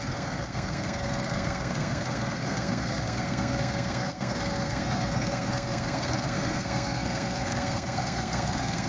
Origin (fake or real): fake